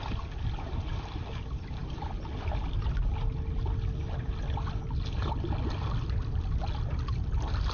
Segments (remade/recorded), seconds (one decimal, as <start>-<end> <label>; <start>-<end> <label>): 0.0-7.7 recorded